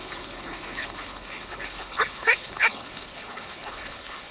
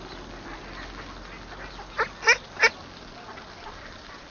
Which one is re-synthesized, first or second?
first